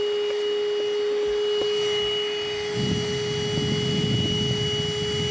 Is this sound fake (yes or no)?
no